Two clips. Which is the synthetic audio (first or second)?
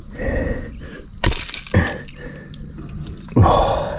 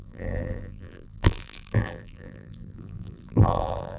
second